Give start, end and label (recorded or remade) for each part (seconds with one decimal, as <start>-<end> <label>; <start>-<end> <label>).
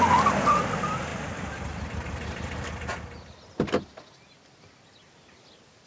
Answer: 0.0-5.9 recorded